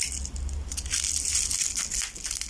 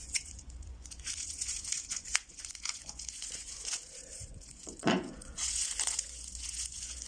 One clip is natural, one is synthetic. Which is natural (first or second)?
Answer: first